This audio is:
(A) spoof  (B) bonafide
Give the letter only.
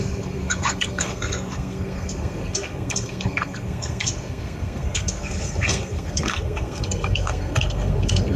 A